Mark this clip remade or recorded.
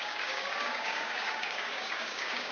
remade